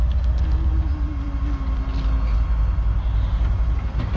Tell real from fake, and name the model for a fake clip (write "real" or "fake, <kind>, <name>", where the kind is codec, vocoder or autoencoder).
real